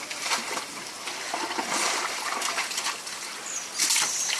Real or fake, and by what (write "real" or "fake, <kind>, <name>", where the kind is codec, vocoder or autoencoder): real